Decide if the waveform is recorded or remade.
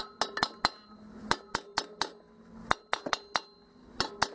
recorded